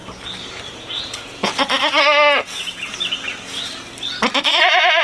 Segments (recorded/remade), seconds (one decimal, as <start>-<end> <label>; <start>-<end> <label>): 0.0-0.7 recorded; 0.7-1.5 remade; 1.5-4.5 recorded; 4.5-5.0 remade